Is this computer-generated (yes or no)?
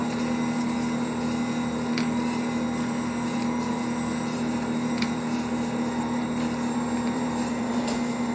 yes